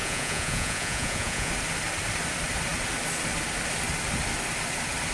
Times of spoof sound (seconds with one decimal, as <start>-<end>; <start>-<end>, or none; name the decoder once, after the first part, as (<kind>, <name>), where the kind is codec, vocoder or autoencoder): 0.0-1.5 (vocoder, Vocos)